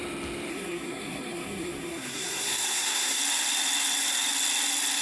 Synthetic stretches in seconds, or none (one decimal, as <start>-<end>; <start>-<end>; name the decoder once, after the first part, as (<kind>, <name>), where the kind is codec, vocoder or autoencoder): 0.5-3.2 (codec, SNAC)